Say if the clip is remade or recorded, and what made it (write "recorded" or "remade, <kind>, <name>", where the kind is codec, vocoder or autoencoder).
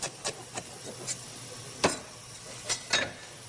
recorded